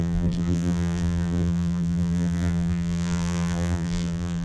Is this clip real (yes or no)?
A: no